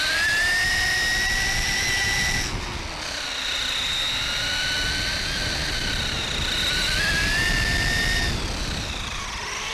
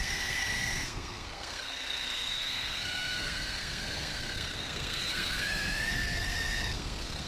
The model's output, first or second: second